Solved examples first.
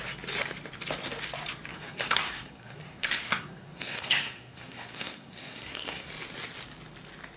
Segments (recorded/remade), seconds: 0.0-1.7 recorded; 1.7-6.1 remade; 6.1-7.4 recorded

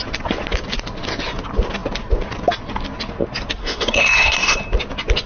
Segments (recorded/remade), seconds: 0.0-3.6 recorded; 3.6-4.6 remade; 4.6-5.3 recorded